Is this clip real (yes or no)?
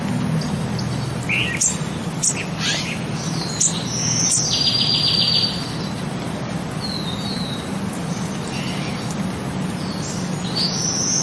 yes